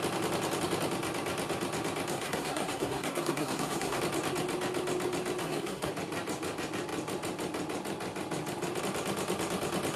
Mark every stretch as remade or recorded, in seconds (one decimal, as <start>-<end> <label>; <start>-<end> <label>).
0.0-2.1 recorded; 2.1-4.0 remade; 4.0-5.4 recorded; 5.4-5.9 remade; 5.9-10.0 recorded